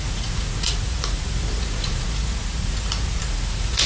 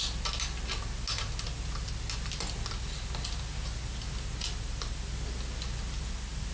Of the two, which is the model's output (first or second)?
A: first